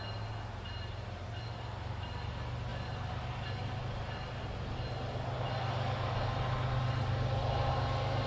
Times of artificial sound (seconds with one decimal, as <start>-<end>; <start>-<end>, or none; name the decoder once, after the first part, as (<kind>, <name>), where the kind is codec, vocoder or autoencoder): none